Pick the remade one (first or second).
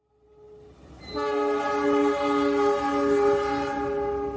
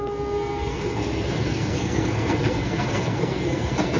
second